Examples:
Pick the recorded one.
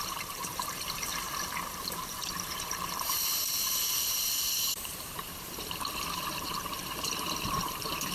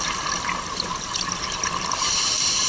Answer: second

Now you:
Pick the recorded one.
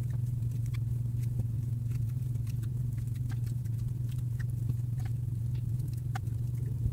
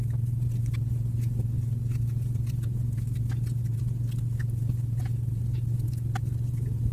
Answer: second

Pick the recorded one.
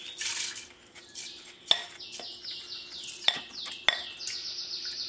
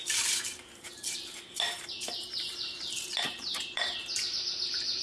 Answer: first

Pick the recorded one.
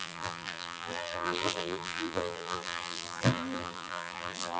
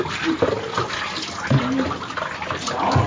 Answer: second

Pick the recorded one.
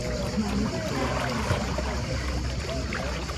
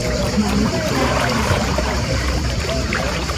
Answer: first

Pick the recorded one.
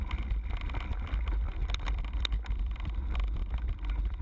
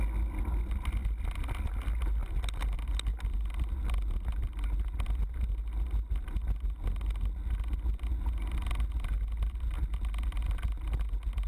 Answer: second